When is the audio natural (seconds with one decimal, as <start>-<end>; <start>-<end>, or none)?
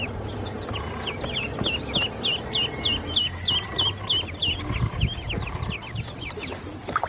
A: 0.0-7.1